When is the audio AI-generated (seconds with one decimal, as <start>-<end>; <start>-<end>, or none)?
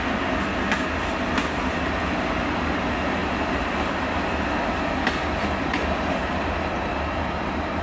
3.2-7.8